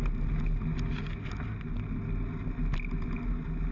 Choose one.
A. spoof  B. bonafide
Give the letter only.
B